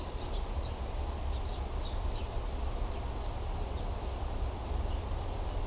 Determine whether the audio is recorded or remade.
recorded